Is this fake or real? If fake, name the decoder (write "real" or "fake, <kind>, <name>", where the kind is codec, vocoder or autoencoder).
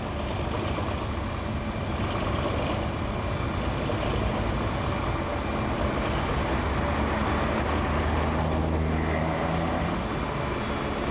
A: real